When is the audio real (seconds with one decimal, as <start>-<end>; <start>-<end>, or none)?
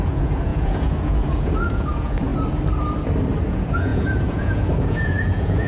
2.3-3.4